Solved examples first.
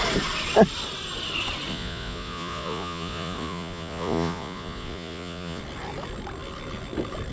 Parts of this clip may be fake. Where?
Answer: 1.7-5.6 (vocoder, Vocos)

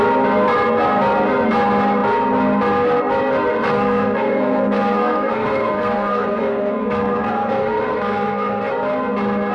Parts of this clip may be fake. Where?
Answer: 3.5-8.7 (codec, SNAC)

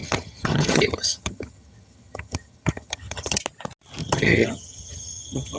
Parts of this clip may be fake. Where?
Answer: 0.0-3.4 (vocoder, HiFi-GAN); 4.0-5.6

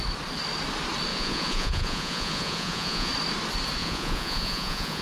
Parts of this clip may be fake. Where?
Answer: 1.1-3.1 (vocoder, Vocos); 3.8-5.0

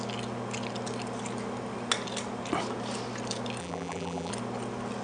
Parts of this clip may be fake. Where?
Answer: 3.6-4.3 (vocoder, BigVGAN v2)

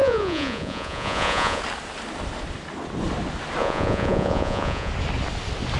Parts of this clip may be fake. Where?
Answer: 0.0-1.6 (vocoder, Vocos); 3.6-4.9

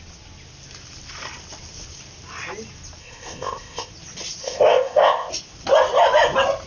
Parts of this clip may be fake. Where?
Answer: 3.0-3.9 (codec, ZipCodec); 4.4-5.3

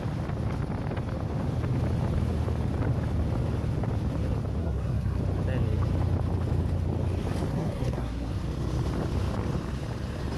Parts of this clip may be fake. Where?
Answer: 4.6-5.2 (codec, SNAC); 7.5-8.3